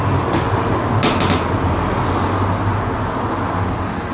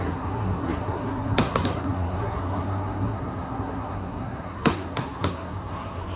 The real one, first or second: first